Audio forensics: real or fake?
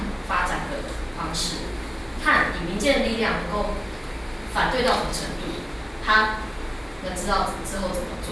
real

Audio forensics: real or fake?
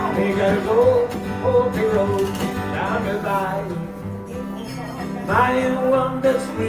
real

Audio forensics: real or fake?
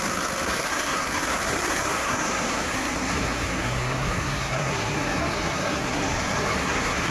fake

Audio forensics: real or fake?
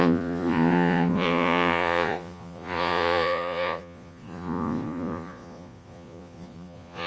fake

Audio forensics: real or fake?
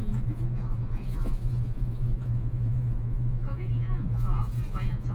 fake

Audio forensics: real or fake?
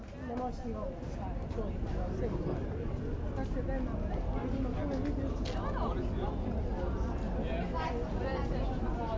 real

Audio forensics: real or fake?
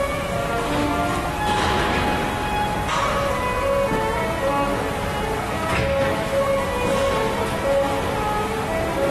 real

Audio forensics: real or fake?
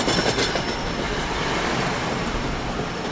real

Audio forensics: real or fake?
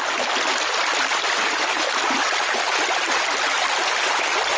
real